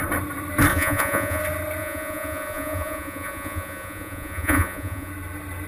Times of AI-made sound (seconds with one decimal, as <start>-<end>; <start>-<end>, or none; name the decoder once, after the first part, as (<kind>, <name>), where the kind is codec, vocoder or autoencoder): 0.7-1.4 (vocoder, Vocos); 1.8-5.1